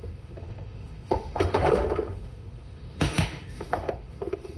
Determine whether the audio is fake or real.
fake